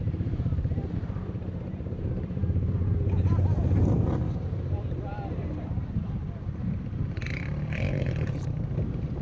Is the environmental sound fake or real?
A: fake